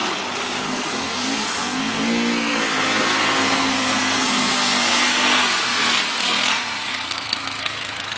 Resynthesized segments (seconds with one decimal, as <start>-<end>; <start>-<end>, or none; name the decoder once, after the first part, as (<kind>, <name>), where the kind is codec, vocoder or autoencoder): 0.6-8.2 (codec, SNAC)